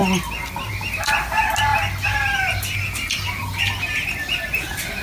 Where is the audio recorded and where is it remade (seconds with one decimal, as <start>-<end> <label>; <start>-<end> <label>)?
0.0-5.0 recorded